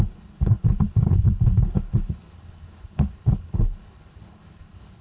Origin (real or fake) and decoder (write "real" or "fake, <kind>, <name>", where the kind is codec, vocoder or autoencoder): fake, codec, HILCodec